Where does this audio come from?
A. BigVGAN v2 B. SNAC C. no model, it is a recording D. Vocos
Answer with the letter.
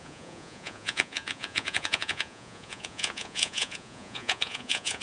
D